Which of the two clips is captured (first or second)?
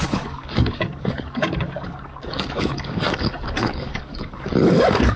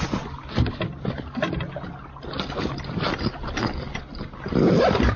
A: second